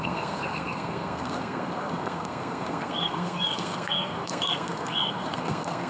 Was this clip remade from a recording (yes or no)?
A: yes